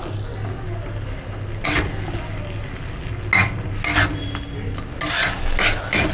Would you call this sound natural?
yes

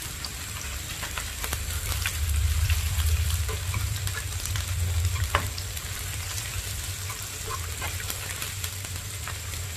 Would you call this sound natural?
no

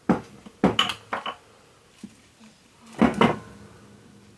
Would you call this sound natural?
yes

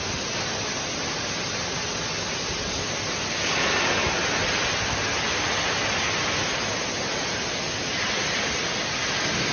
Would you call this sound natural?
yes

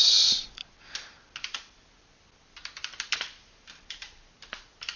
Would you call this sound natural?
yes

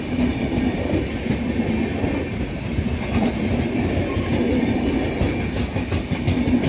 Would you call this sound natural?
yes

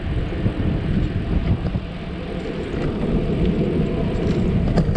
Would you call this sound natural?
yes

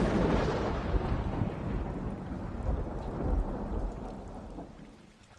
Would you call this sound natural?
no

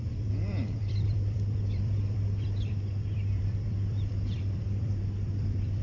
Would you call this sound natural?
no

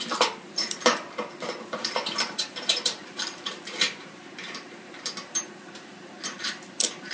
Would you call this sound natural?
no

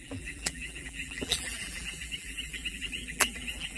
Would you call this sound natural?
no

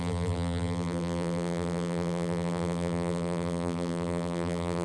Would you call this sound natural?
no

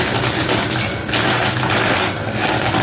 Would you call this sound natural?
yes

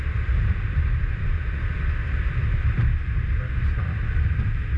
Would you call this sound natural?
no